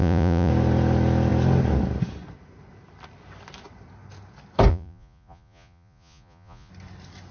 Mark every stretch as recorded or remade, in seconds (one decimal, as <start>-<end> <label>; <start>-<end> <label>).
0.0-0.5 remade; 0.5-4.7 recorded; 4.7-6.7 remade; 6.7-7.3 recorded